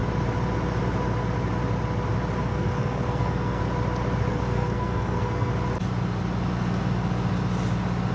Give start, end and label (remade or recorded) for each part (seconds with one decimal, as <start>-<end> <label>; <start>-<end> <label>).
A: 0.0-2.4 recorded; 2.4-3.6 remade; 3.6-4.3 recorded; 4.3-5.5 remade; 5.5-8.1 recorded